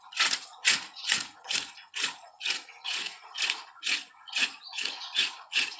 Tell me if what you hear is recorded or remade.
remade